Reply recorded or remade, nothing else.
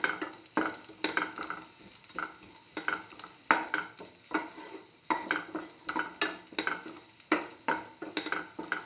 recorded